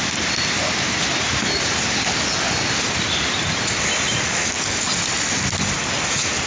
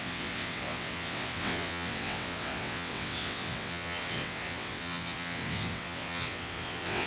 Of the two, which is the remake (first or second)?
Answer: second